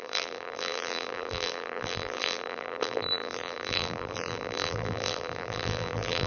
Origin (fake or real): fake